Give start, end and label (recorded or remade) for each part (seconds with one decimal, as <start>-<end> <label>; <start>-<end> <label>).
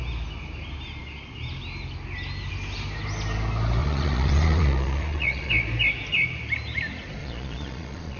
0.0-3.8 recorded; 3.8-5.5 remade; 5.5-7.2 recorded; 7.2-8.2 remade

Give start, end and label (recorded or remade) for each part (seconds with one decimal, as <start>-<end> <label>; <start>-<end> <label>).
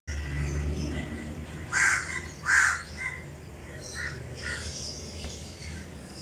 0.0-3.6 recorded; 3.6-6.2 remade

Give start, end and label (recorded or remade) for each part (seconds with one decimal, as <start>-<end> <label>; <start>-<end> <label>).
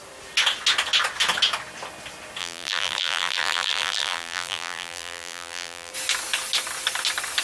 0.0-2.4 recorded; 2.4-5.9 remade; 5.9-7.4 recorded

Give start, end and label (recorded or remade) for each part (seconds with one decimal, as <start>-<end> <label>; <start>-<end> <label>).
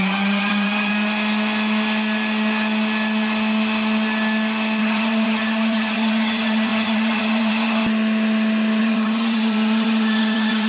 0.0-0.9 remade; 0.9-4.8 recorded; 4.8-7.8 remade; 7.8-8.8 recorded; 8.8-10.7 remade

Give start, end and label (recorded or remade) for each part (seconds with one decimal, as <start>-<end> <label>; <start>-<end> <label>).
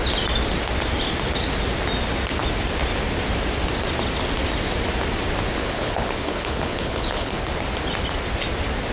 0.0-5.6 recorded; 5.6-7.5 remade; 7.5-8.9 recorded